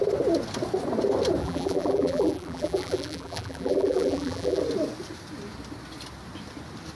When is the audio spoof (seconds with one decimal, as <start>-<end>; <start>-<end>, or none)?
1.4-4.6